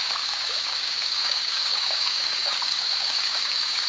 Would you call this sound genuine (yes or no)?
no